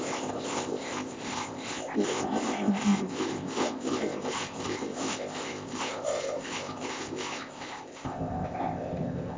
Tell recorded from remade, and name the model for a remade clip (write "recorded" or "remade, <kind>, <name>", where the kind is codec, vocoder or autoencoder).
remade, codec, ZipCodec